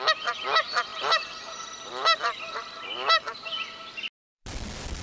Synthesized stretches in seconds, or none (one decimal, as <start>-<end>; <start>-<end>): none